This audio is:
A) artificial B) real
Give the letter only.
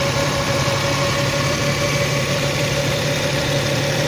A